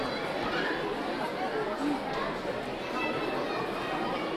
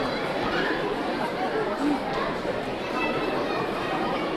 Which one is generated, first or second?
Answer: second